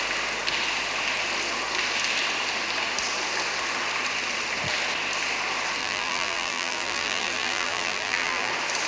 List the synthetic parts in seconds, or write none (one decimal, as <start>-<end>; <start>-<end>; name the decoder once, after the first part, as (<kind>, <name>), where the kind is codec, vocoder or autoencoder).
5.8-8.5 (vocoder, BigVGAN v2)